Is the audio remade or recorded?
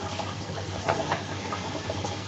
remade